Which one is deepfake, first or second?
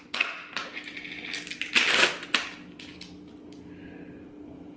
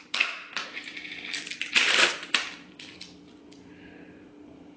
second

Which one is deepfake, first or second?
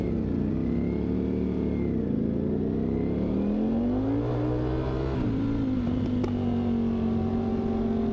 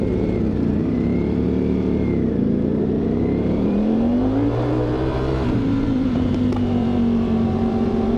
second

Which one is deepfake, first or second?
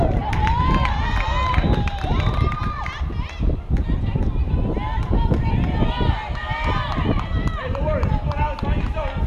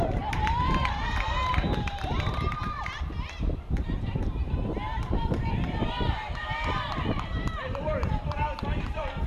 second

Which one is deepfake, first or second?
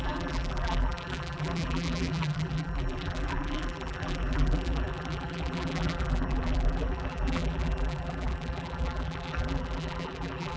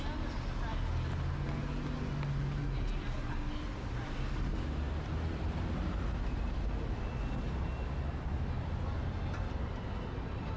first